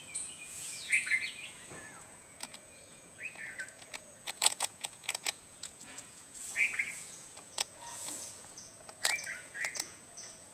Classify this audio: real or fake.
fake